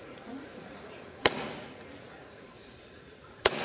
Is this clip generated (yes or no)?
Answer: yes